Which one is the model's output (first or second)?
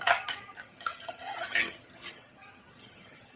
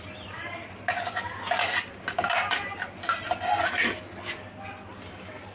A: first